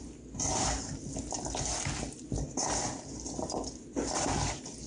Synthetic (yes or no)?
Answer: no